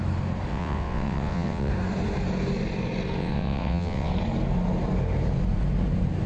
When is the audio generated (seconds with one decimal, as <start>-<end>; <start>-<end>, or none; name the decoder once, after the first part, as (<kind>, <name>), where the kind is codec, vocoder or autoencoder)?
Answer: 0.5-1.7 (vocoder, WaveNeXt); 3.2-4.1